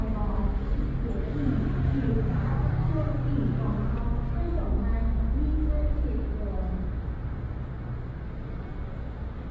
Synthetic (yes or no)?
no